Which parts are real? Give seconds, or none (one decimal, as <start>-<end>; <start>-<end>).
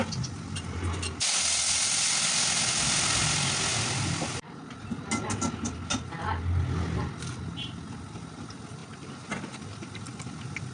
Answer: 0.0-10.7